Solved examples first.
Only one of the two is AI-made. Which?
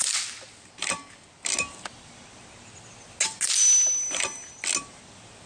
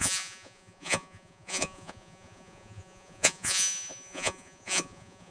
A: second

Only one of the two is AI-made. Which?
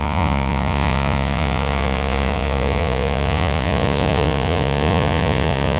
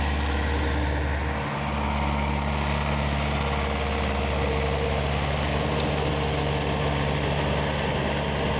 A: first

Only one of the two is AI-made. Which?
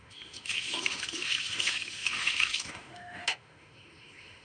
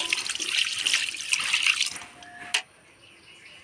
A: first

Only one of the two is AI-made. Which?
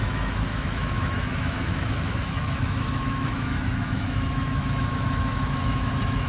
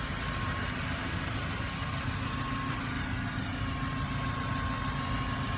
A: first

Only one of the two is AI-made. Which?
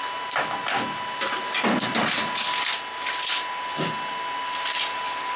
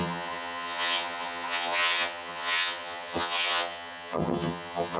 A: second